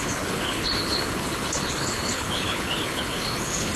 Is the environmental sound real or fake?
fake